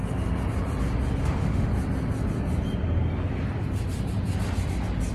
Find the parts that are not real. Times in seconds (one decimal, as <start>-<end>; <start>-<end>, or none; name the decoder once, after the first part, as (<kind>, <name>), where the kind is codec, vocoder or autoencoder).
1.2-1.7 (autoencoder, DAC-VAE)